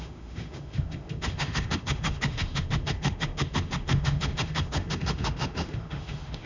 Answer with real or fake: fake